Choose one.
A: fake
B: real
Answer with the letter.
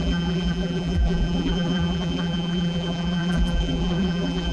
A